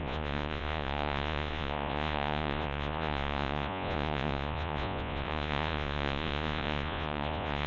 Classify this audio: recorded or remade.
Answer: remade